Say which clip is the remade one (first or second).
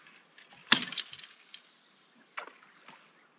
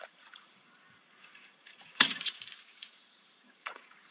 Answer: second